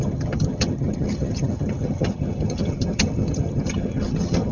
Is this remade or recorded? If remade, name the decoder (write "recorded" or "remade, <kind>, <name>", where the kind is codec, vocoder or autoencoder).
remade, vocoder, HiFi-GAN